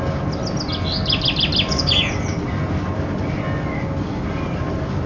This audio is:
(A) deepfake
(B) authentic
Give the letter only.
B